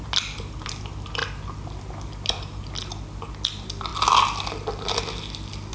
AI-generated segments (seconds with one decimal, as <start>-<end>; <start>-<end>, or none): none